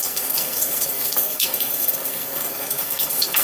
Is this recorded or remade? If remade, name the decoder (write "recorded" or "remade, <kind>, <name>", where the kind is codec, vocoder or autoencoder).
remade, codec, SNAC